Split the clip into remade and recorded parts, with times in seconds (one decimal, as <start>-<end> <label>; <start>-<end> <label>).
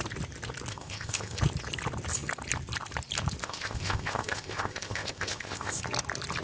0.0-0.7 recorded; 0.7-1.4 remade; 1.4-3.4 recorded; 3.4-5.8 remade; 5.8-6.4 recorded